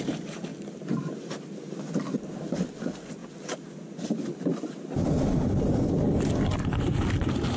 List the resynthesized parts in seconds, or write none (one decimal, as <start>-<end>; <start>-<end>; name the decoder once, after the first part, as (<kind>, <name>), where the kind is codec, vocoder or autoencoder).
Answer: none